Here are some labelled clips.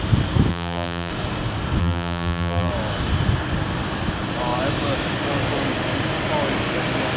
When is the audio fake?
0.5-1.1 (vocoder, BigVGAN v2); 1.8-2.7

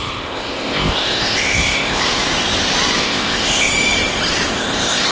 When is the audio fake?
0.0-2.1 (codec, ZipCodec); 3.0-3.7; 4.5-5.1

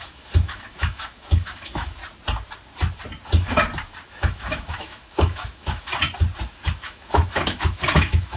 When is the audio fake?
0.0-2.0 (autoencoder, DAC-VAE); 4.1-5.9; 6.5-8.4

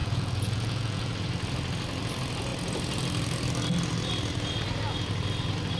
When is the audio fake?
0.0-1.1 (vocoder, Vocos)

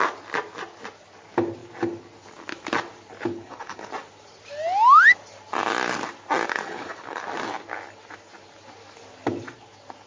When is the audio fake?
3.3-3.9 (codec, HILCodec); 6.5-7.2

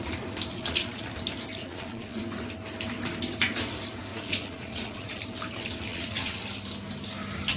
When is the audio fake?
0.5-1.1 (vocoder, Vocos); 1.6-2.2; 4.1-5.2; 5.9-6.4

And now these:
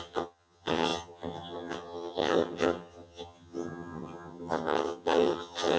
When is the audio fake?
0.0-5.8 (vocoder, HiFi-GAN)